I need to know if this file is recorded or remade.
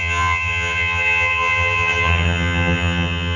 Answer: remade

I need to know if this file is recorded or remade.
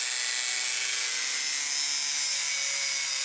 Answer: recorded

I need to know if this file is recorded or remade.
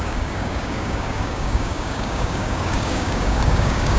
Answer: remade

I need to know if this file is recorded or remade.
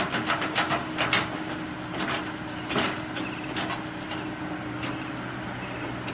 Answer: recorded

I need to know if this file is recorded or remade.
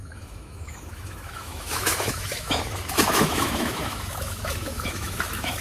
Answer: remade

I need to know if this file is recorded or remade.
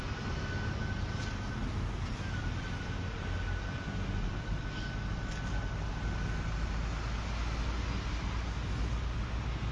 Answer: recorded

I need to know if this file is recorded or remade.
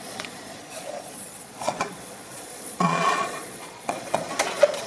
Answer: remade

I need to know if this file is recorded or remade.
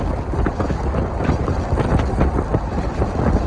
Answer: recorded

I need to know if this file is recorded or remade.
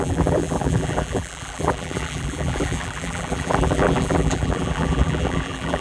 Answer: remade